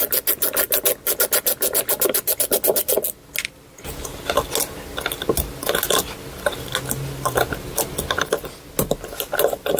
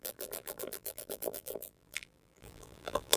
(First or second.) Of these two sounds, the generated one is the second